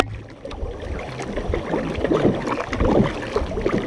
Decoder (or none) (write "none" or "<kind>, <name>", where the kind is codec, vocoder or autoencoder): none